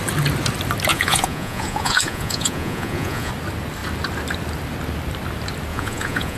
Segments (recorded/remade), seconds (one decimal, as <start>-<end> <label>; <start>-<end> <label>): 0.0-0.9 recorded; 0.9-3.3 remade; 3.3-5.7 recorded; 5.7-6.4 remade